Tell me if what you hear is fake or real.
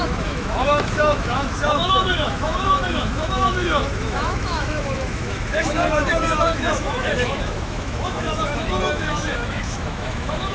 fake